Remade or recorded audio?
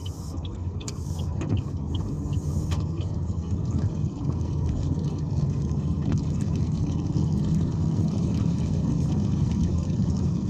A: remade